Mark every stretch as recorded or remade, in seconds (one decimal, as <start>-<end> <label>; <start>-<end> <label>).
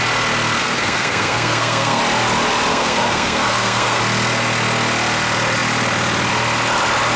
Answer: 0.0-0.6 recorded; 0.6-2.0 remade; 2.0-2.7 recorded; 2.7-4.0 remade; 4.0-7.2 recorded